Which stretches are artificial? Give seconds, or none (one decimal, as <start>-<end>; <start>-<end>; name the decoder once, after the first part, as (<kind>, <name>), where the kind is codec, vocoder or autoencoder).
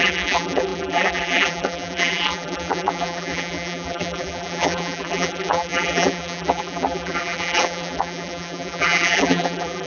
0.0-9.9 (vocoder, BigVGAN v2)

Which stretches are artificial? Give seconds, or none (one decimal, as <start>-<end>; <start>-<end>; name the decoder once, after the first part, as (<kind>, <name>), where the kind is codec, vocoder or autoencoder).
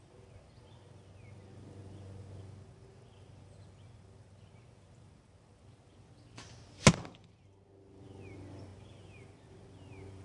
none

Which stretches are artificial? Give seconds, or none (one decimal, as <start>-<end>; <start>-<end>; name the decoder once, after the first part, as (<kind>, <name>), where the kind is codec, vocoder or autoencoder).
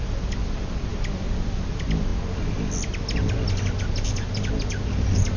none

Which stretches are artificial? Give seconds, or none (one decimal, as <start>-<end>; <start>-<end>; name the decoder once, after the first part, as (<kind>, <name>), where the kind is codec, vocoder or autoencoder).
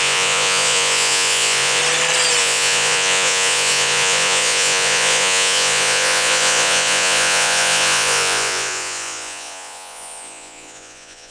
0.0-1.8 (vocoder, Vocos); 2.4-11.3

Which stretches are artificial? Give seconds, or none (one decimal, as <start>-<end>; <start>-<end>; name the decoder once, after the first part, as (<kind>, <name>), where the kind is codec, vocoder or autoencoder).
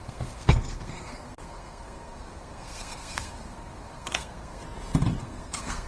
0.0-4.6 (codec, SNAC); 5.2-5.9